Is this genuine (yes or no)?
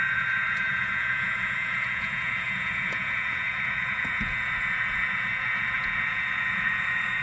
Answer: no